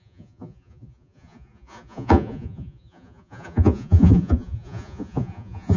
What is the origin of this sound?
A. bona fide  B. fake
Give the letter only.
B